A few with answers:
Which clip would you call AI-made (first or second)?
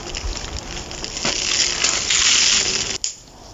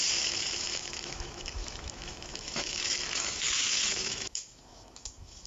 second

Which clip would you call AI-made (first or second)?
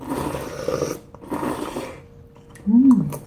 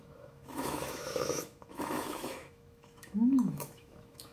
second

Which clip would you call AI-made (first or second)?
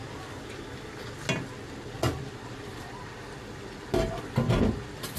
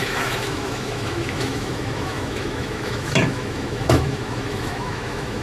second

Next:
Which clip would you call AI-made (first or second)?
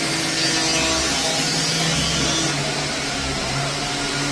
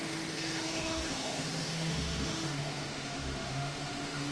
second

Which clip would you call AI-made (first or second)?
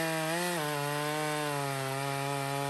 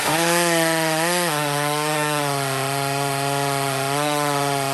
second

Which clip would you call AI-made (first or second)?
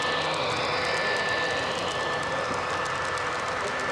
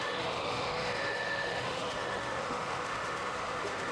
second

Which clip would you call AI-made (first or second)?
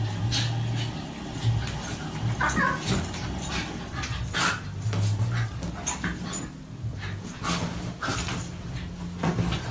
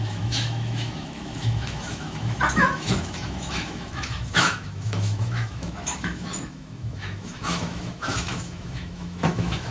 second